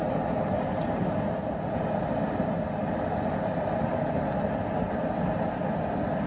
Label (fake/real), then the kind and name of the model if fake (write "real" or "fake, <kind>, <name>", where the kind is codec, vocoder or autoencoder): real